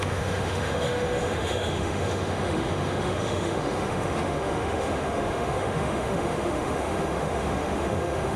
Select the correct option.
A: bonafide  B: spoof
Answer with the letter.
B